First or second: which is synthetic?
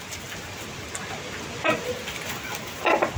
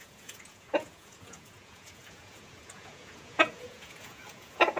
second